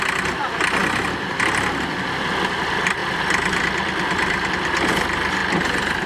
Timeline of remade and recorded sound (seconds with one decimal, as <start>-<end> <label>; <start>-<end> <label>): 0.0-0.8 remade; 0.8-1.9 recorded; 1.9-6.1 remade